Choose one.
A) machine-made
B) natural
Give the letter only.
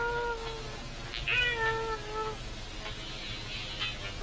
B